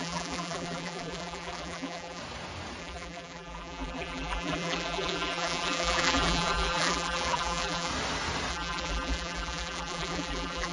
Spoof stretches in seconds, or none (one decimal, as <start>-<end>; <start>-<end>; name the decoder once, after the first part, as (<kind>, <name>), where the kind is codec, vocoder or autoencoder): 0.0-2.2 (vocoder, BigVGAN v2); 2.8-7.9; 8.5-10.7